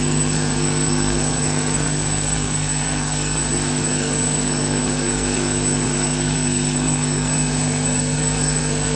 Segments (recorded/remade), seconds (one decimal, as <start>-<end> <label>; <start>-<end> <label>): 0.0-9.0 remade